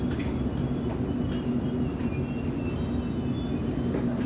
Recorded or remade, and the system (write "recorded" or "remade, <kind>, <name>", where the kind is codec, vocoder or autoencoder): recorded